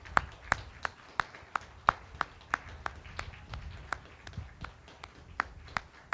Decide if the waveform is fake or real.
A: real